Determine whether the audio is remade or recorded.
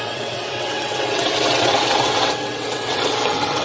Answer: remade